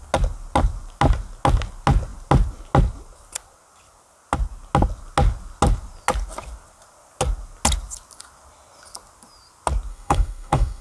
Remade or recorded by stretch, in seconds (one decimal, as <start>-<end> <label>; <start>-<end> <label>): 0.0-9.9 recorded; 9.9-10.8 remade